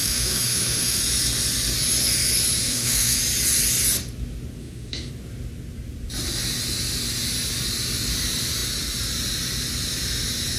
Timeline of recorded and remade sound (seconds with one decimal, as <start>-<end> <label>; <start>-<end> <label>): 0.0-1.0 remade; 1.0-2.6 recorded; 2.6-3.2 remade; 3.2-4.6 recorded; 4.6-5.1 remade; 5.1-10.6 recorded